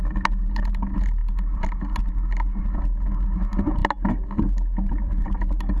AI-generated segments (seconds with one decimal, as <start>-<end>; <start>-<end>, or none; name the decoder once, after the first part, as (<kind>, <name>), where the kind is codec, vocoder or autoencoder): none